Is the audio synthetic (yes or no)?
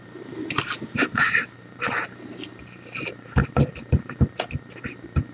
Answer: yes